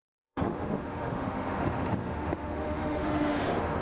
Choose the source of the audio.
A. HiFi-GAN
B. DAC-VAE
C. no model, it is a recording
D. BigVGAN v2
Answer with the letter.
B